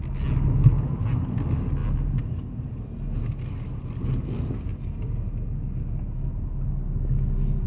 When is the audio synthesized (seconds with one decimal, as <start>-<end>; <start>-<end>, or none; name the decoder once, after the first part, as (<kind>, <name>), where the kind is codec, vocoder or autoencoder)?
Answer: none